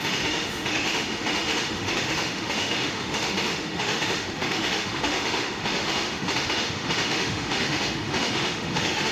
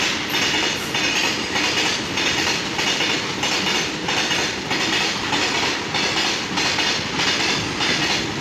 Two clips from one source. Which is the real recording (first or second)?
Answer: second